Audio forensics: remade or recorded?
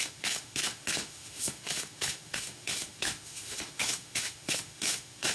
remade